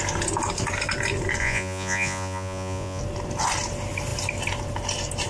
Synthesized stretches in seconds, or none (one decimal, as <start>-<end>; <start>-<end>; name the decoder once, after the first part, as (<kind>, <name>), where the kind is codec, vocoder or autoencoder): 1.4-3.0 (vocoder, Vocos)